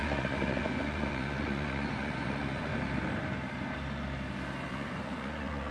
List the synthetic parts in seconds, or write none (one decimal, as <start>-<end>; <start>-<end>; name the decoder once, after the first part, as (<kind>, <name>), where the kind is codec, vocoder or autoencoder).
0.0-2.7 (vocoder, Vocos); 4.7-5.7